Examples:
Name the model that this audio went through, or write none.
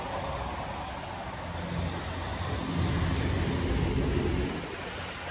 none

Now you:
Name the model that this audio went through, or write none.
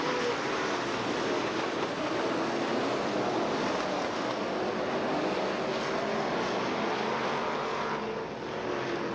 none